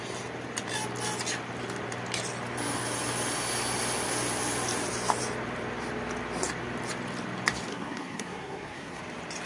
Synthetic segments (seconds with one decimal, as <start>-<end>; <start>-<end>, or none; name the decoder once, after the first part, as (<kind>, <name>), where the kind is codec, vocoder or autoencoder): 7.7-9.0 (codec, SNAC)